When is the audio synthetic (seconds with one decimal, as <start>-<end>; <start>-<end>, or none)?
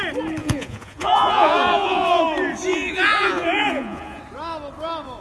0.4-2.2; 2.7-4.2